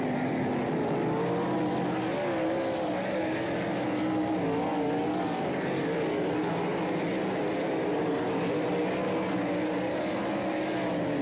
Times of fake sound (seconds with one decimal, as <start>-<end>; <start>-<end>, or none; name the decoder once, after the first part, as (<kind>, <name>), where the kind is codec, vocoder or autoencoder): none